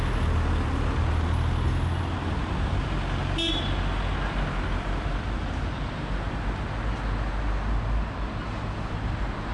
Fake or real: real